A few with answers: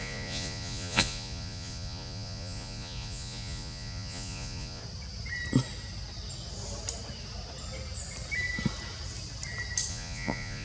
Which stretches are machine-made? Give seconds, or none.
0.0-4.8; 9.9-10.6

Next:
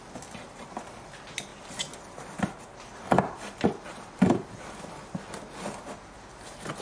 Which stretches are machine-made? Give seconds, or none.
none

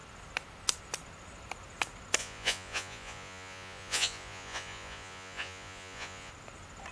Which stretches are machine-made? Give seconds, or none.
2.2-6.3

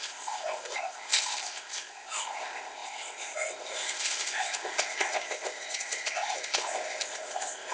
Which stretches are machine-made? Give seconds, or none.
0.0-7.7

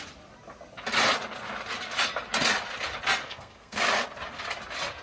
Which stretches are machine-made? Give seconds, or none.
3.2-3.8